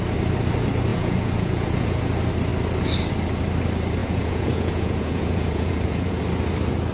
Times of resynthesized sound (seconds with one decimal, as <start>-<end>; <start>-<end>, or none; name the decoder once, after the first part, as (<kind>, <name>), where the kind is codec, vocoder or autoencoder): 0.9-2.0 (vocoder, Vocos); 4.0-6.2